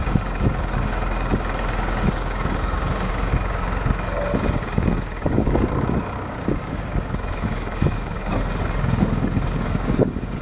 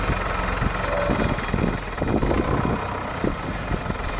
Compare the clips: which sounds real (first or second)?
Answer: second